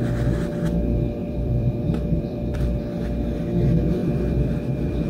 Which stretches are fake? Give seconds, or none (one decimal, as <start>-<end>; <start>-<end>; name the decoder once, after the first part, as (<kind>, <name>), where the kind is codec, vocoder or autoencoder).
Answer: 1.2-2.8 (vocoder, BigVGAN v2); 4.0-5.1